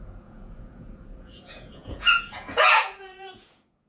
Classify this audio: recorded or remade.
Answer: remade